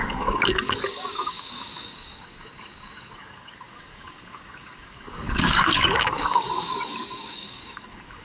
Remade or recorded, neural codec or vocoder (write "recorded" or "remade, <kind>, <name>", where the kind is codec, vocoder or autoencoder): remade, codec, DAC